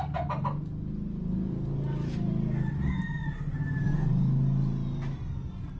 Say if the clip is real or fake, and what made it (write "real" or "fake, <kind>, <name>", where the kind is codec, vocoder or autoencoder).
real